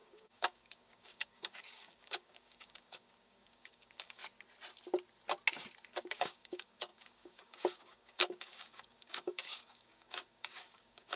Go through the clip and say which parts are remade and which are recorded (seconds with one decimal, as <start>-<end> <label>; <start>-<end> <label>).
0.0-4.2 remade; 4.2-6.0 recorded; 6.0-11.2 remade